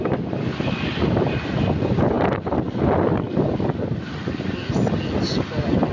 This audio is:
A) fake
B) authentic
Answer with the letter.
B